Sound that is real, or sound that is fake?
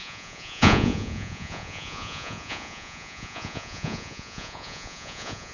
fake